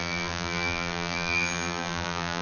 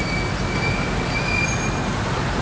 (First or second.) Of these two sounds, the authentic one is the second